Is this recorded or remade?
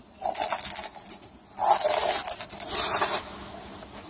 recorded